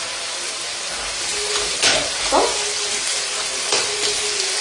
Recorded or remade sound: recorded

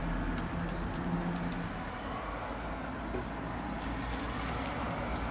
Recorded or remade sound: recorded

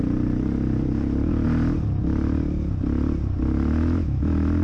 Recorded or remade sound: recorded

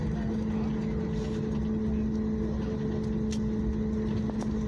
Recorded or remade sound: recorded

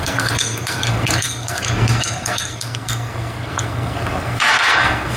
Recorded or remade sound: remade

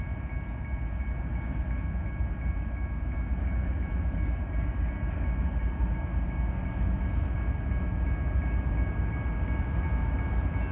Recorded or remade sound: recorded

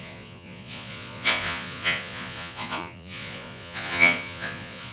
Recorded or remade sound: remade